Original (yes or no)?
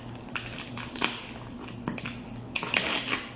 yes